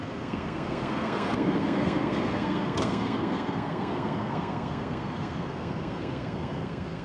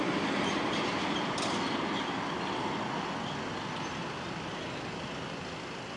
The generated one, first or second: first